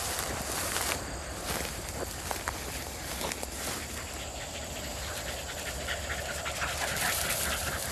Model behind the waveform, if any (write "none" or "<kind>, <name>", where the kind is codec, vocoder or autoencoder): none